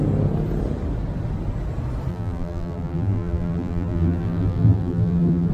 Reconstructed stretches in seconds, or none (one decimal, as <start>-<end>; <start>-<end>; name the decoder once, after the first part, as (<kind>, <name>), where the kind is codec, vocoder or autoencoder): 2.1-5.5 (vocoder, BigVGAN v2)